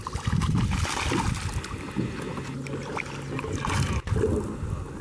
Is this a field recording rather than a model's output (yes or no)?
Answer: yes